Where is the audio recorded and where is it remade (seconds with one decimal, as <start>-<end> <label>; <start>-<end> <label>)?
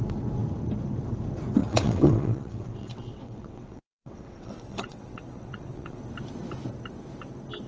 0.0-1.6 recorded; 1.6-6.0 remade; 6.0-7.7 recorded